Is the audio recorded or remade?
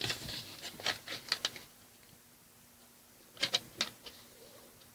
recorded